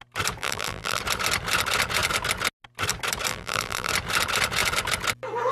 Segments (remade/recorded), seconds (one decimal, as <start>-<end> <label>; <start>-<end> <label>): 0.0-0.4 recorded; 0.4-1.0 remade; 1.0-3.3 recorded; 3.3-3.9 remade; 3.9-5.5 recorded